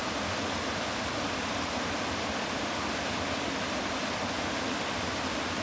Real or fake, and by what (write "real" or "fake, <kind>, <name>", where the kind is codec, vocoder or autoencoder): real